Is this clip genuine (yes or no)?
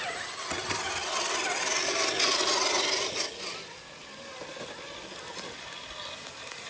yes